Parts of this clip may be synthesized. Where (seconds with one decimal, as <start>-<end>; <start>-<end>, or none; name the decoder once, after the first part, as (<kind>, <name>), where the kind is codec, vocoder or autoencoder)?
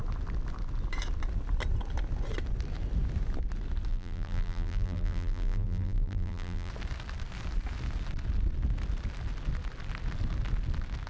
3.9-6.7 (vocoder, BigVGAN v2)